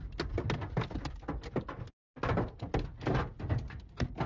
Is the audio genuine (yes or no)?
yes